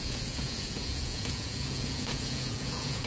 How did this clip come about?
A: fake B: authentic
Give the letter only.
A